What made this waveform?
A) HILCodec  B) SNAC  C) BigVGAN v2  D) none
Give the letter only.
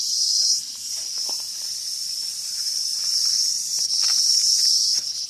C